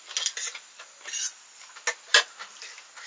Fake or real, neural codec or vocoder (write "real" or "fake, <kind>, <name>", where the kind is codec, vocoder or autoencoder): real